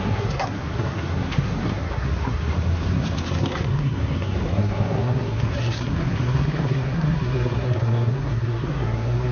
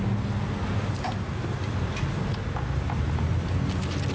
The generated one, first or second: first